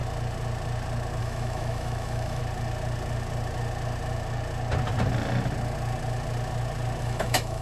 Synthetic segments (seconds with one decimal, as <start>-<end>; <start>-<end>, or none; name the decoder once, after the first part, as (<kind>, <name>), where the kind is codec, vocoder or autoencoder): 1.2-2.4 (autoencoder, DAC-VAE); 7.0-7.6